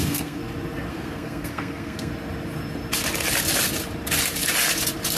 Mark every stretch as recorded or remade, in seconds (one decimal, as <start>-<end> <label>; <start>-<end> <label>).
0.0-0.4 remade; 0.4-0.9 recorded; 0.9-2.1 remade; 2.1-5.2 recorded